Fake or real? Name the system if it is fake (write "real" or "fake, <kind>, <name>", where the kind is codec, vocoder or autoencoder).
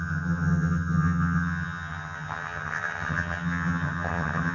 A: fake, vocoder, HiFi-GAN